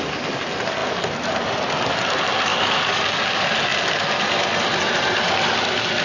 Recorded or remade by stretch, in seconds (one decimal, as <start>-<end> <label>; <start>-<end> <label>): 0.0-2.5 recorded; 2.5-3.0 remade; 3.0-6.0 recorded